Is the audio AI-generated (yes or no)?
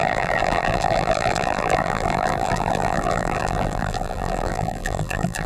yes